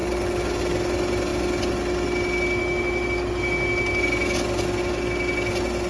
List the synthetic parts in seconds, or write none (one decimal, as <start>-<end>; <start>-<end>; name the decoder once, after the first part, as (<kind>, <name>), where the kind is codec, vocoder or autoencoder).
none